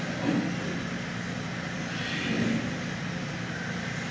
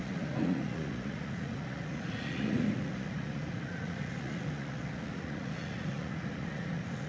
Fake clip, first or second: second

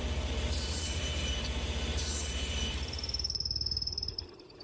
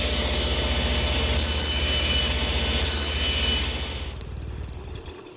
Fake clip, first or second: first